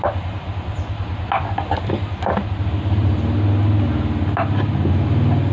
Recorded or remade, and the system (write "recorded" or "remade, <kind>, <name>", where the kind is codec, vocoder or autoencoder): recorded